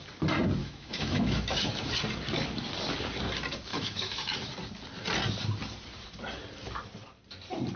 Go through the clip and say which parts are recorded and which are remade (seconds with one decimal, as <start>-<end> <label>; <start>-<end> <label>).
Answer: 0.0-0.6 recorded; 0.6-1.9 remade; 1.9-3.7 recorded; 3.7-4.4 remade; 4.4-7.8 recorded